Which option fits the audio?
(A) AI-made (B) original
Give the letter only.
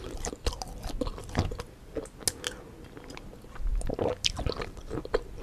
B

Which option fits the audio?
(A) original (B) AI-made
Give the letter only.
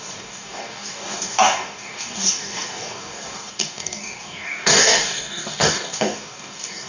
B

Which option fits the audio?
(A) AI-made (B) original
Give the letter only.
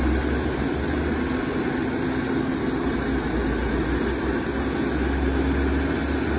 B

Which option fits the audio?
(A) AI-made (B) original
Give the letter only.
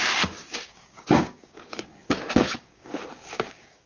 A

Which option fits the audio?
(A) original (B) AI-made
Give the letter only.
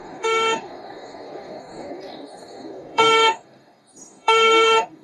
B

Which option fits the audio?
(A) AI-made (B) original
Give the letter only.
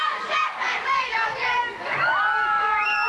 A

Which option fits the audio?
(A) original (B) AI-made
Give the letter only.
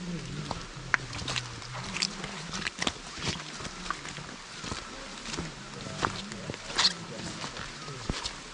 A